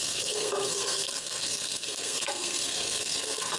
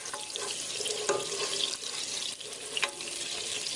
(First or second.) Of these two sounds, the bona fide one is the second